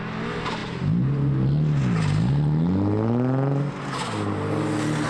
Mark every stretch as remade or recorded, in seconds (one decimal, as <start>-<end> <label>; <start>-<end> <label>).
0.0-5.1 recorded